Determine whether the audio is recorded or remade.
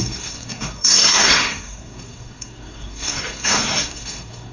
remade